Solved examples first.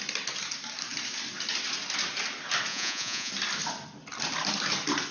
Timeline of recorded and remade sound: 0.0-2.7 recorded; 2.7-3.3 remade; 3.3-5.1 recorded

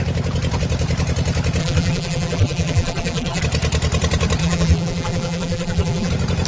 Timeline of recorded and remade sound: 0.0-1.6 recorded; 1.6-3.4 remade; 3.4-4.4 recorded; 4.4-6.1 remade; 6.1-6.5 recorded

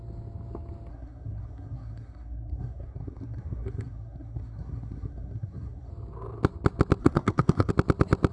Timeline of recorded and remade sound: 0.0-0.9 recorded; 0.9-5.9 remade; 5.9-7.0 recorded; 7.0-7.7 remade; 7.7-8.3 recorded